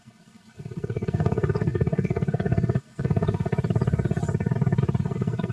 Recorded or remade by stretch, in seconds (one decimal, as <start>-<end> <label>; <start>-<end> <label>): 0.0-3.5 remade; 3.5-5.0 recorded; 5.0-5.5 remade